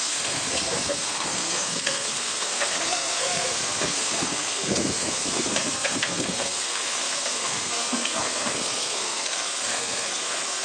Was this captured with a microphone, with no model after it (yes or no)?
no